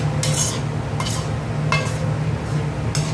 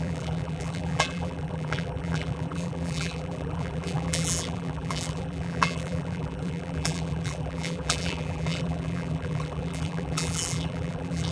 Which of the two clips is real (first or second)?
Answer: first